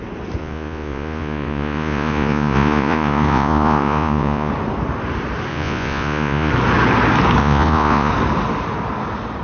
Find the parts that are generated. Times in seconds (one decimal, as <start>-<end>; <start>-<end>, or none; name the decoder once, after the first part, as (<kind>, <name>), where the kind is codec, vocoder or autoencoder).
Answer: 0.4-4.5 (vocoder, Vocos); 5.5-6.5; 7.4-8.1